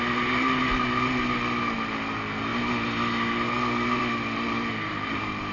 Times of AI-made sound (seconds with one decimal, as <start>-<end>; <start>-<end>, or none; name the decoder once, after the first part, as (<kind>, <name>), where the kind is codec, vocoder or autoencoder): none